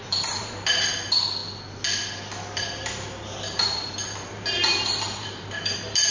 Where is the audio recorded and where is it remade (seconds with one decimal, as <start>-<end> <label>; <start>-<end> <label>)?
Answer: 0.0-1.4 remade; 1.4-2.6 recorded; 2.6-6.1 remade